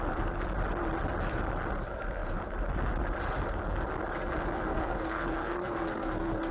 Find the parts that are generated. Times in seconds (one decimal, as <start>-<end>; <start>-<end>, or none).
4.7-6.5

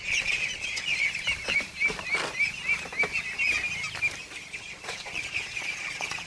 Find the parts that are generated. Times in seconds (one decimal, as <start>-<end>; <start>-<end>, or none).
0.0-1.0; 4.6-6.3

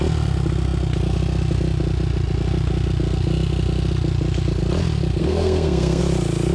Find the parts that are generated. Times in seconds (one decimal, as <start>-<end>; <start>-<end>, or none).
5.2-6.0

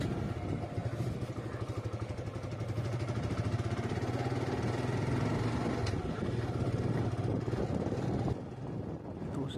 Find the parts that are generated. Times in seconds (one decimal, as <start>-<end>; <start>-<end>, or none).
none

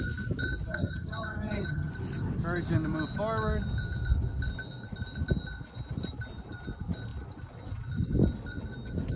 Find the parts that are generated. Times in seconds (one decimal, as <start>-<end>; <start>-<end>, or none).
0.7-1.9

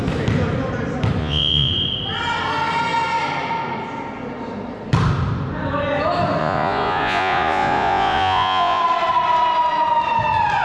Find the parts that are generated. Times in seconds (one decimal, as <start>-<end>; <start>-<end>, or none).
1.2-1.7; 6.4-8.8

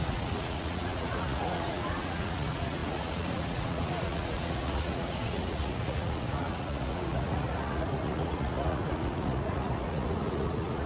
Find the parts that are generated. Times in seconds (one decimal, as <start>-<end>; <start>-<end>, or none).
0.0-10.9

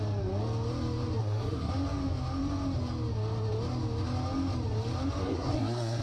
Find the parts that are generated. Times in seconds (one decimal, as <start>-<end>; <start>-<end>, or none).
1.2-1.7; 5.2-6.0